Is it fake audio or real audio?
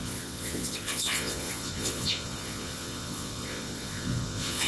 fake